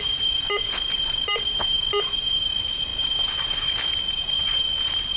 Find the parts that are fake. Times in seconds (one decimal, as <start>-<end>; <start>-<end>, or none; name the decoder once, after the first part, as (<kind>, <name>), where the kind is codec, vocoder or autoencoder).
none